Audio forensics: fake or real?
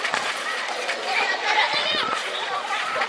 fake